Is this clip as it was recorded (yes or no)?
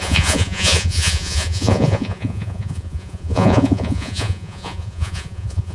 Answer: no